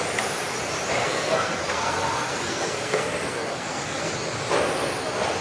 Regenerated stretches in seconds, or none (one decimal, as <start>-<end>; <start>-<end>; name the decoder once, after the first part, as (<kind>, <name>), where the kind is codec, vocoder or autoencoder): 1.0-4.1 (codec, SNAC)